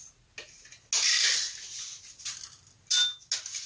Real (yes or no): yes